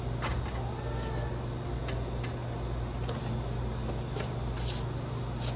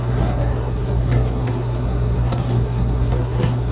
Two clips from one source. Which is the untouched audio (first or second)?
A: first